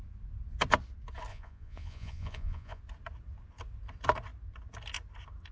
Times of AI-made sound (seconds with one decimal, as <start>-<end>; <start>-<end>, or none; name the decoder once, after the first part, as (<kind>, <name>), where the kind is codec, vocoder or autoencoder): 1.3-2.8 (vocoder, Vocos)